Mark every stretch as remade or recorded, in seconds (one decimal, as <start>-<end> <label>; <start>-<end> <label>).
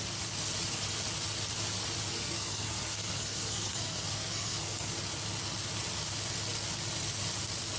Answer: 0.0-2.1 recorded; 2.1-4.9 remade; 4.9-7.8 recorded